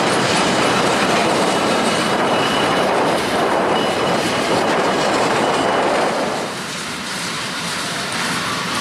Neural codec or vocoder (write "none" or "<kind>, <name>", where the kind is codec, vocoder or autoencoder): vocoder, BigVGAN v2